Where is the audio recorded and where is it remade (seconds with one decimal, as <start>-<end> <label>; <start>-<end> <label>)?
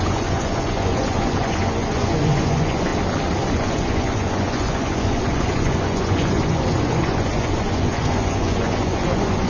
0.0-2.9 remade; 2.9-3.5 recorded; 3.5-9.5 remade